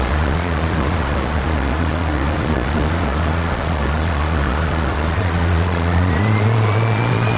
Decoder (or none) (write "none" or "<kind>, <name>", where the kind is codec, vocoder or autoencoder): vocoder, Vocos